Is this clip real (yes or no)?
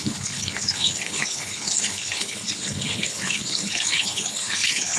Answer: no